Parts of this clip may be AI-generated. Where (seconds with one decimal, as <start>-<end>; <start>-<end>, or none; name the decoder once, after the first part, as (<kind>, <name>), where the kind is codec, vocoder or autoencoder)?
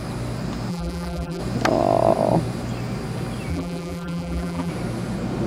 0.7-1.4 (vocoder, BigVGAN v2); 3.5-4.7